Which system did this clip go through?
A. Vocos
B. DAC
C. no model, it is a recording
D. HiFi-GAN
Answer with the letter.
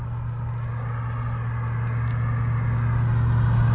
C